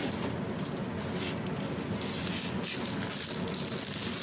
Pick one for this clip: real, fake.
real